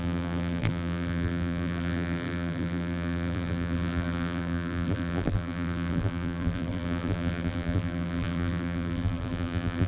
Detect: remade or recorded remade